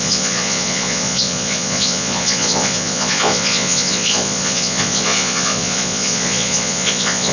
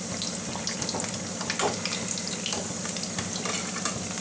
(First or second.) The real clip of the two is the second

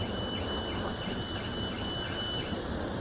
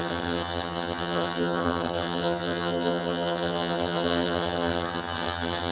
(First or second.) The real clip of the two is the first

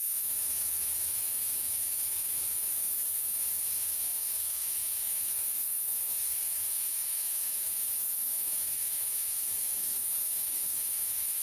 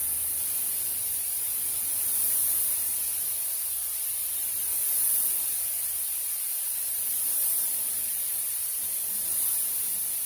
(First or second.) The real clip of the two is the second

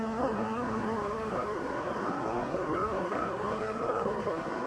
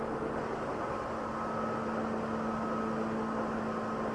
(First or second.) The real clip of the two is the second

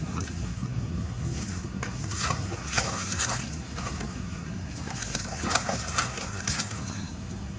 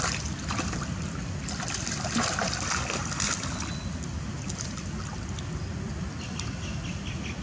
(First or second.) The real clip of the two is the second